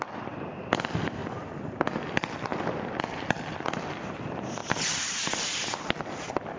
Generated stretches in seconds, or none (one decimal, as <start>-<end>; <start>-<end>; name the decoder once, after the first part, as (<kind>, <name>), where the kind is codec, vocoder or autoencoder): 0.0-1.2 (vocoder, BigVGAN v2); 1.7-2.5; 3.0-6.6